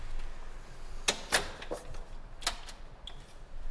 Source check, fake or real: real